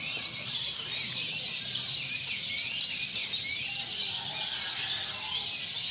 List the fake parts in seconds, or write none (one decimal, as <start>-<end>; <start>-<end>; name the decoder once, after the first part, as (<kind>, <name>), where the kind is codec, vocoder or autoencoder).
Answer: none

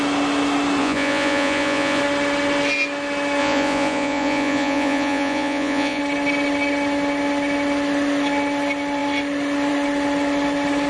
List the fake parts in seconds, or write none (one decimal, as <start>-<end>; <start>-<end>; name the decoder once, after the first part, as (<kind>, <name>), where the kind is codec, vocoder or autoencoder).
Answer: 0.8-2.0 (vocoder, Vocos); 3.4-6.0

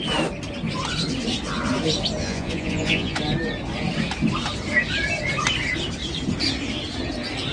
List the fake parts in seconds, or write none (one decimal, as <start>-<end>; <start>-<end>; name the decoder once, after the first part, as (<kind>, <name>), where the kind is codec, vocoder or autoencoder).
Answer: 2.2-3.2 (vocoder, Vocos)

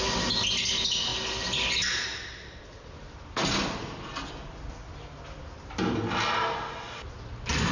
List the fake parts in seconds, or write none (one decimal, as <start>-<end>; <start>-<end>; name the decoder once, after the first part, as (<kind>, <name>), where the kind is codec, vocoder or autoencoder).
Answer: none

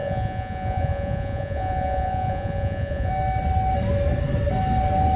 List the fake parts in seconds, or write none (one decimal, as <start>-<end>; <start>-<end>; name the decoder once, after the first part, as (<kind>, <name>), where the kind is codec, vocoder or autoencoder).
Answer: 0.0-3.1 (vocoder, Vocos)

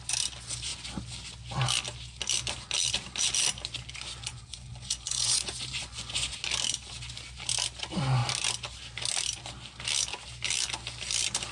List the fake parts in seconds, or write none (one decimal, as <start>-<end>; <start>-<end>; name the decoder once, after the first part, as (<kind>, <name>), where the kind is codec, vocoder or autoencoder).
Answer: 4.3-6.3 (vocoder, Vocos)